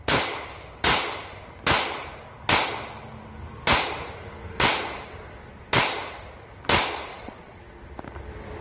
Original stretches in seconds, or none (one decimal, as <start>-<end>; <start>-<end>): 0.0-7.1; 7.6-8.6